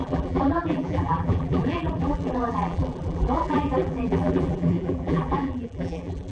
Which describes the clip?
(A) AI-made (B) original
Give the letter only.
A